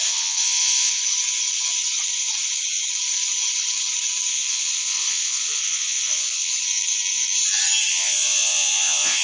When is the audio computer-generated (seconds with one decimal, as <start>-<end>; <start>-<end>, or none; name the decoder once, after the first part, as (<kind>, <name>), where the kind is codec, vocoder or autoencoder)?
0.0-1.0 (vocoder, Vocos); 4.3-6.5; 7.9-9.2